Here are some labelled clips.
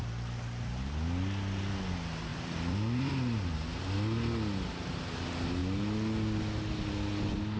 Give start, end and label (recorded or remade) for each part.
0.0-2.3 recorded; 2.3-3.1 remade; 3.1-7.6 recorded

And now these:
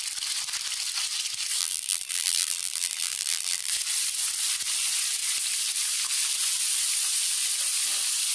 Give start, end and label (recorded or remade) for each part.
0.0-1.6 recorded; 1.6-3.7 remade; 3.7-8.3 recorded

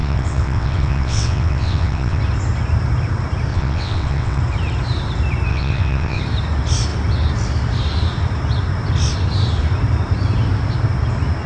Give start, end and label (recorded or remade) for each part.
0.0-2.2 remade; 2.2-3.5 recorded; 3.5-4.4 remade; 4.4-5.5 recorded; 5.5-6.2 remade; 6.2-11.5 recorded

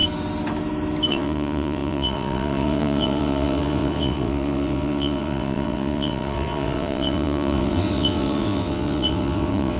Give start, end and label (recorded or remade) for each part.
0.0-1.1 recorded; 1.1-9.8 remade

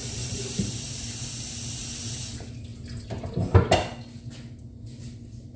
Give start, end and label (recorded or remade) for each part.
0.0-1.3 remade; 1.3-5.6 recorded

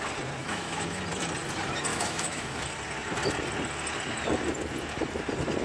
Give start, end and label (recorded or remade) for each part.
0.0-0.4 recorded; 0.4-1.0 remade; 1.0-1.9 recorded; 1.9-2.6 remade; 2.6-5.6 recorded

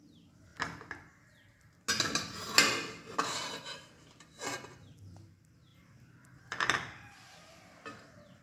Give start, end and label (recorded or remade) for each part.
0.0-0.5 recorded; 0.5-1.8 remade; 1.8-3.7 recorded; 3.7-4.7 remade; 4.7-5.7 recorded; 5.7-8.4 remade